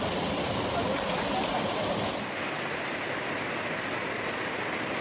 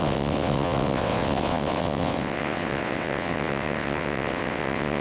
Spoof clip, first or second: second